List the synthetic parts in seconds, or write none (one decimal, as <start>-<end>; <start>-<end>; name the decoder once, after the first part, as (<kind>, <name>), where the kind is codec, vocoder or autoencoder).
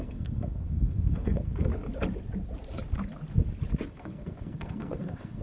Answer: 0.0-1.7 (codec, SNAC); 3.9-5.4